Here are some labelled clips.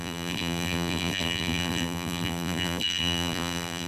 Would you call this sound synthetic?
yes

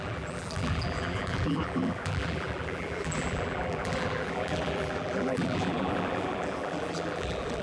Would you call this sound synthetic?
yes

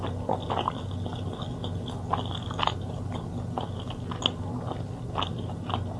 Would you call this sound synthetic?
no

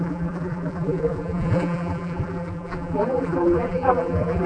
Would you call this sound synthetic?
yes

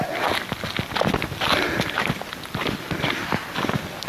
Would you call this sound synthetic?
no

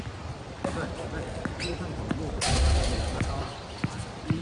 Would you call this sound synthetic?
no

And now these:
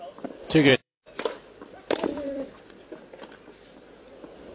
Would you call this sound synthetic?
yes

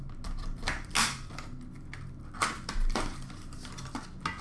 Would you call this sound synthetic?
no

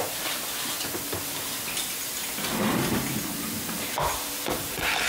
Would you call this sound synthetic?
yes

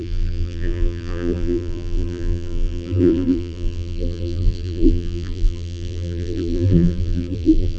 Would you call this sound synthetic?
yes